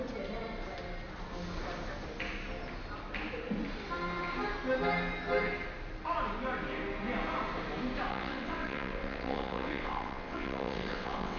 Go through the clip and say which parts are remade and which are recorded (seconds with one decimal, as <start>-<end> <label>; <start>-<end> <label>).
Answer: 0.0-8.1 recorded; 8.1-11.4 remade